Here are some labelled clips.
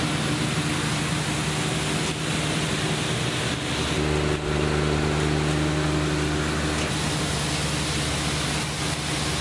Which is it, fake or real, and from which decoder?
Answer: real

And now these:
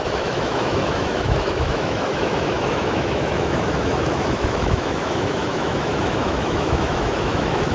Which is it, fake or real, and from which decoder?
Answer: fake, autoencoder, DAC-VAE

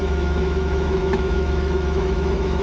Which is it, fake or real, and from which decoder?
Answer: fake, autoencoder, DAC-VAE